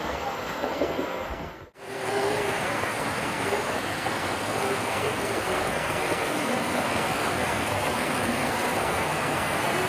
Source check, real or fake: fake